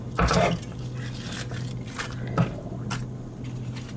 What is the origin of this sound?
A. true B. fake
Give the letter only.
A